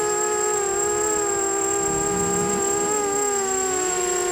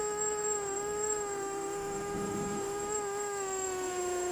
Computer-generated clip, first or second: second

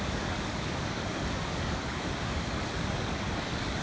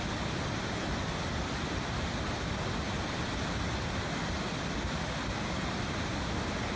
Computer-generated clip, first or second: first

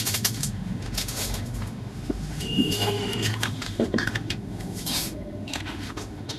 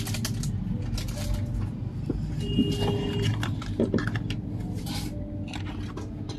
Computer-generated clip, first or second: first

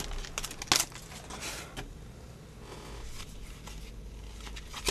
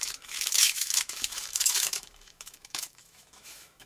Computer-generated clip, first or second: second